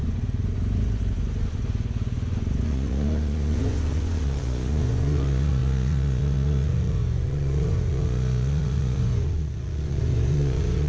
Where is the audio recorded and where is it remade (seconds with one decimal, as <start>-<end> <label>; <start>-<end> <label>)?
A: 0.0-10.9 remade